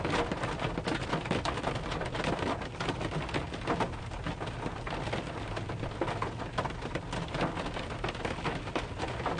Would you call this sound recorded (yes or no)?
yes